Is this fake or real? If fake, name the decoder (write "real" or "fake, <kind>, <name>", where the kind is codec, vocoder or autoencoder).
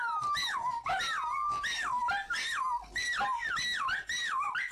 real